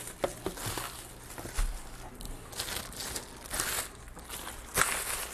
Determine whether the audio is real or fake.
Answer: real